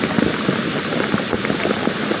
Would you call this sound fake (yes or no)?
no